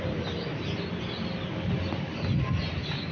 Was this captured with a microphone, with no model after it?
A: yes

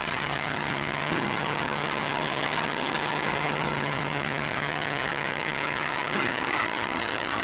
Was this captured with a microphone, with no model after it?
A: no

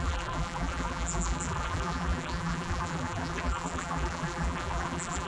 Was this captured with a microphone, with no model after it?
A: no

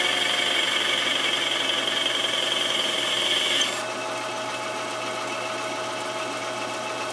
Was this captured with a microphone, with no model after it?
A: yes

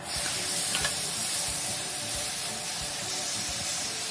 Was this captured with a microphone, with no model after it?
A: no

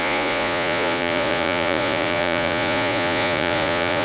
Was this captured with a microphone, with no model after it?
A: no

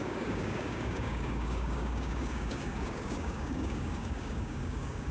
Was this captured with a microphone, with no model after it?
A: no